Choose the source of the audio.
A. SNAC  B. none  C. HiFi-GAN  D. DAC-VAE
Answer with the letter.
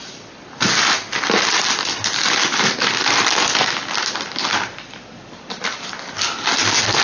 B